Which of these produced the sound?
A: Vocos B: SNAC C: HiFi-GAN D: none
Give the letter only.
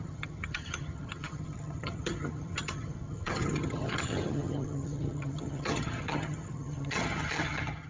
C